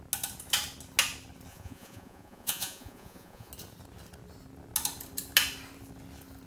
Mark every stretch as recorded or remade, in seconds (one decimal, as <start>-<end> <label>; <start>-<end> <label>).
0.0-1.5 recorded; 1.5-3.5 remade; 3.5-6.5 recorded